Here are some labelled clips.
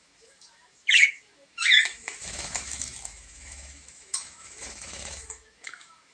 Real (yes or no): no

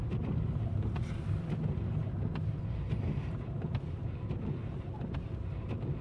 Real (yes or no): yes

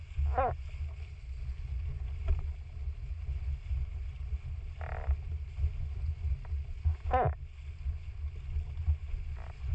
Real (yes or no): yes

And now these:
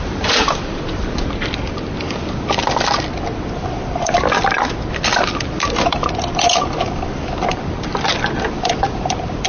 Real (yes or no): no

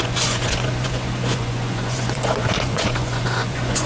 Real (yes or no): no